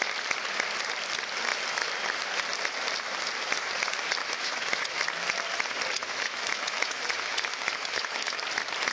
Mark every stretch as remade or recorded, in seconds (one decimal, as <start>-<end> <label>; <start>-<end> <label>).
0.0-4.2 recorded; 4.2-5.0 remade; 5.0-6.0 recorded; 6.0-8.4 remade; 8.4-8.9 recorded